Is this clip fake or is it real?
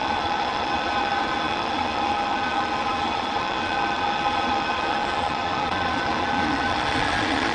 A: fake